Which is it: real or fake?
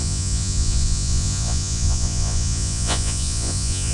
fake